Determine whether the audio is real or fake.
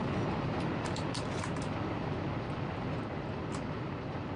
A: fake